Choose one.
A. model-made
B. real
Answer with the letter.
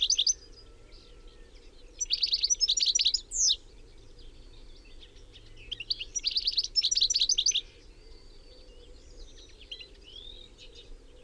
B